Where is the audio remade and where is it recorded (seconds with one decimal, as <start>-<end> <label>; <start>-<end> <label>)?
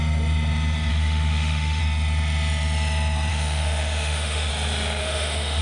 0.0-0.9 recorded; 0.9-1.8 remade; 1.8-3.3 recorded; 3.3-4.5 remade; 4.5-5.0 recorded; 5.0-5.6 remade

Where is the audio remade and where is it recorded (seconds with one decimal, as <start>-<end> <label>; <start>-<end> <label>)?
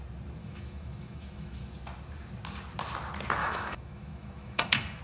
0.0-0.4 recorded; 0.4-1.7 remade; 1.7-3.4 recorded; 3.4-5.0 remade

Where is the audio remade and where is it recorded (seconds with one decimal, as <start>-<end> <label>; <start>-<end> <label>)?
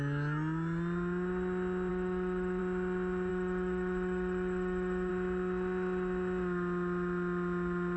0.0-1.9 recorded; 1.9-2.6 remade; 2.6-3.3 recorded; 3.3-5.1 remade; 5.1-8.0 recorded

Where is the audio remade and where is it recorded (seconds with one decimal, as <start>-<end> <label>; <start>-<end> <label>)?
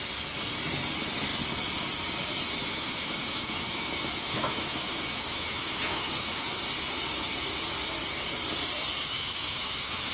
0.0-2.6 recorded; 2.6-6.6 remade; 6.6-9.1 recorded; 9.1-10.1 remade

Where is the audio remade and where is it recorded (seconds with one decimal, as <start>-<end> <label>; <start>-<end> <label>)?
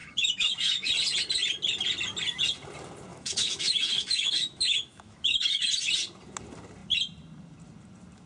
0.0-0.9 remade; 0.9-3.1 recorded; 3.1-5.7 remade; 5.7-8.3 recorded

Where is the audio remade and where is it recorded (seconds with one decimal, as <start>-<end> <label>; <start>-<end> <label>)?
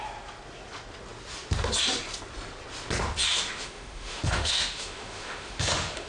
0.0-3.3 recorded; 3.3-6.1 remade